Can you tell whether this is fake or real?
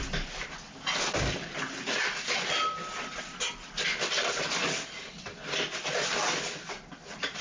real